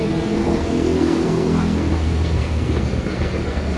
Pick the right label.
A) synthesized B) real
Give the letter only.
A